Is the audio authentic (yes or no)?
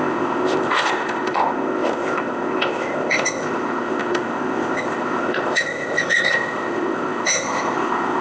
no